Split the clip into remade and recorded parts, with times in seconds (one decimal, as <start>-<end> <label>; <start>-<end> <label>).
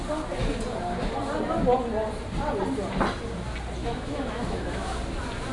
0.0-3.8 recorded; 3.8-5.0 remade; 5.0-5.5 recorded